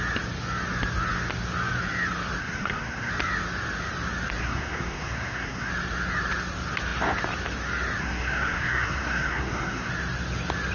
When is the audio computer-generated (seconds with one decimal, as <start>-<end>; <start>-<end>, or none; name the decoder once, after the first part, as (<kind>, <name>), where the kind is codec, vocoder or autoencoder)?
2.4-3.1 (codec, SNAC); 4.4-5.7; 8.0-9.9